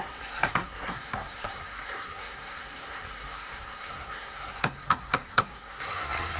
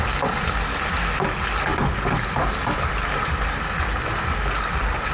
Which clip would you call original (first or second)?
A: second